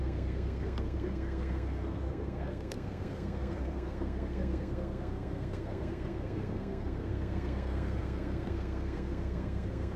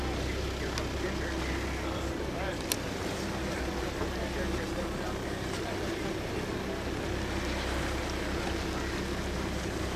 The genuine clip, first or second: second